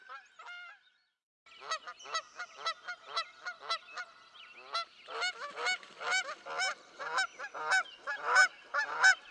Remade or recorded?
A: recorded